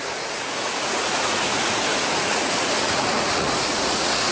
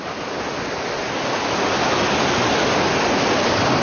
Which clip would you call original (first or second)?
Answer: second